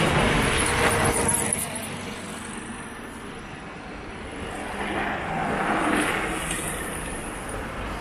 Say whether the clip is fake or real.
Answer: real